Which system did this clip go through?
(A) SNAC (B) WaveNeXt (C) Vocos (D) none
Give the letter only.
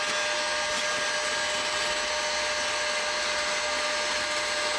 D